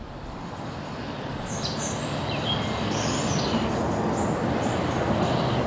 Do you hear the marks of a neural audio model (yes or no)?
no